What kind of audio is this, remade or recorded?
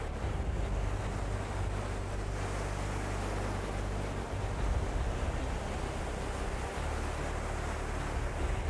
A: recorded